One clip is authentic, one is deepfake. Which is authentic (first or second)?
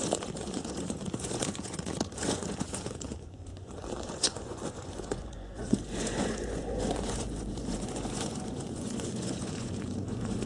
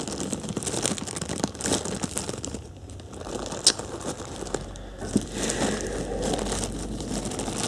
second